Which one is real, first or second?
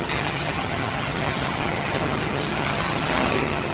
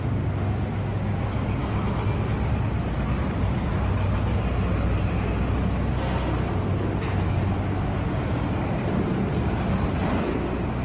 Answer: second